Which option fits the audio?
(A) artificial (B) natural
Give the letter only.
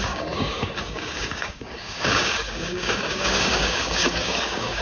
A